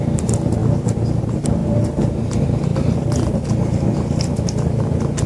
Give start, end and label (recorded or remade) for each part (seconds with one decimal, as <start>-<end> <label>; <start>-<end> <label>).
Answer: 0.0-2.7 recorded; 2.7-3.3 remade; 3.3-5.3 recorded